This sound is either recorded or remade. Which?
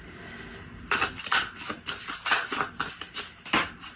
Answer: recorded